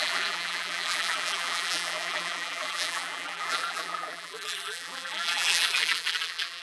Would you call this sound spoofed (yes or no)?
yes